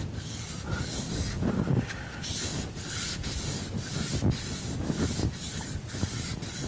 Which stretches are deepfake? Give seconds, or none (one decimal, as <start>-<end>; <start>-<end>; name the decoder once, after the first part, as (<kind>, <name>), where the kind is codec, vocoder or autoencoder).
none